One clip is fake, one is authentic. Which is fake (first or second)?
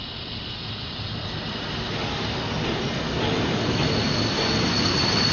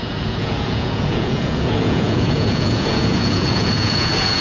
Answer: second